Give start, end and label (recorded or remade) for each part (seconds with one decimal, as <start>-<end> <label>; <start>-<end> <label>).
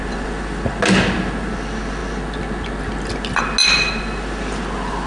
0.0-5.1 recorded